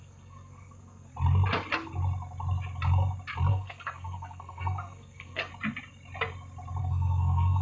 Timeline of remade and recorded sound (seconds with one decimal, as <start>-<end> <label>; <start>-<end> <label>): 0.0-1.1 remade; 1.1-3.5 recorded; 3.5-5.5 remade; 5.5-6.8 recorded; 6.8-7.6 remade